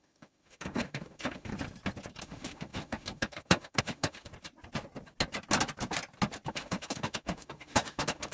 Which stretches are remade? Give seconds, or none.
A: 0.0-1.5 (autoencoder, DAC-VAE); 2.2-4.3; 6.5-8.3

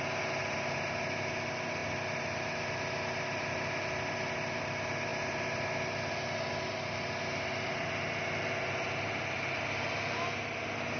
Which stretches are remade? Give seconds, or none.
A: none

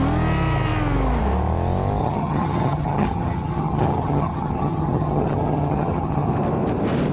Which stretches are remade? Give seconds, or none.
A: 2.0-6.3 (vocoder, HiFi-GAN)